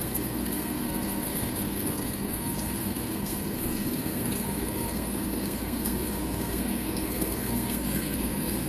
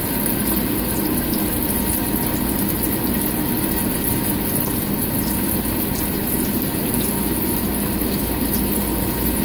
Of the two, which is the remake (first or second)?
first